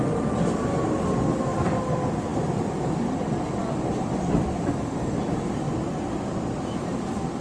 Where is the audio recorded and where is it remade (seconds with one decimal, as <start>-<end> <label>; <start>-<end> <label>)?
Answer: 0.0-7.4 recorded